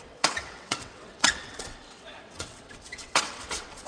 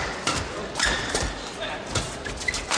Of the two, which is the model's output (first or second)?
first